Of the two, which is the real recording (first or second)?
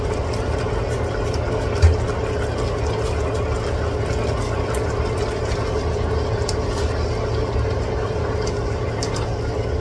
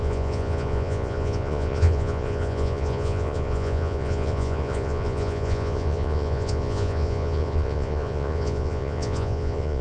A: first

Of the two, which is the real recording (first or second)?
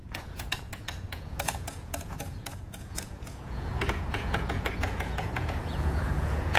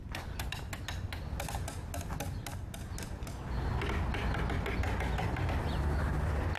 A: second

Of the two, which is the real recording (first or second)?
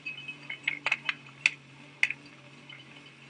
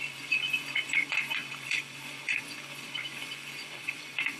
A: first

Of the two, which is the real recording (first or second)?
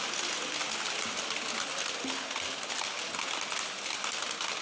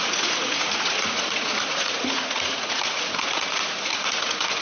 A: first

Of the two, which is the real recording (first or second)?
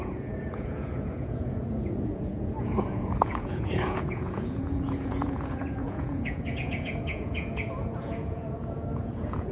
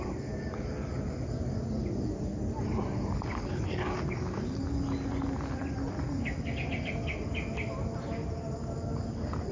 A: second